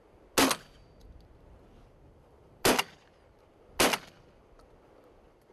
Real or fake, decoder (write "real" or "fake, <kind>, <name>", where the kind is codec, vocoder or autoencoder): real